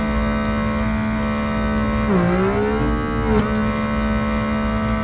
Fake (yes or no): no